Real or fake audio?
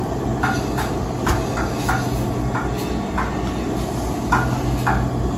real